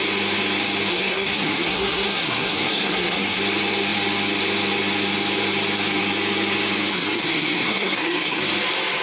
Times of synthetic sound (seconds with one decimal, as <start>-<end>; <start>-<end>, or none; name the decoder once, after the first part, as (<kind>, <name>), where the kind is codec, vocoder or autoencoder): 0.9-3.4 (codec, SNAC); 6.9-8.4